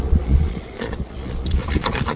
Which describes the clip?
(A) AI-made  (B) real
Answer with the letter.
A